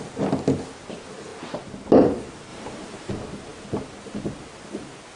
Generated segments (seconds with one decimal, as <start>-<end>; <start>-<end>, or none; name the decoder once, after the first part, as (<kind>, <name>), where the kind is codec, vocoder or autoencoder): 2.5-3.1 (vocoder, BigVGAN v2)